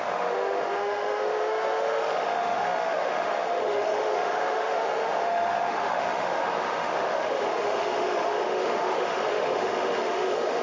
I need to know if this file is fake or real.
fake